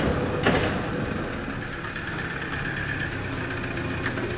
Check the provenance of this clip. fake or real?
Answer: real